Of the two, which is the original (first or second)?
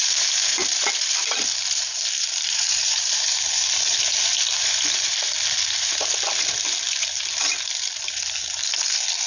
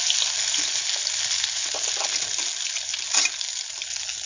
second